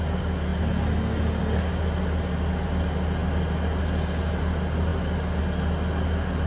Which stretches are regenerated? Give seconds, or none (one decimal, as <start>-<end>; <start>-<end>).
none